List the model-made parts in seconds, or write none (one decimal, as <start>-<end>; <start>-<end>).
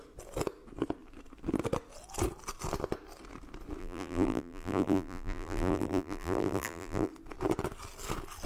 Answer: 3.8-7.1